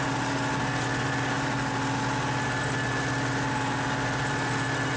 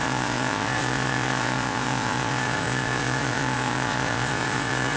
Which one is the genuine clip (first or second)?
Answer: first